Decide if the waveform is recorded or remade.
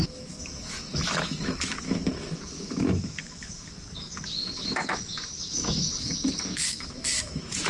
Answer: remade